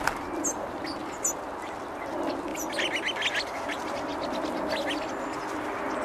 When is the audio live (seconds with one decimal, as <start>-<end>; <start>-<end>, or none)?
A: 0.0-6.0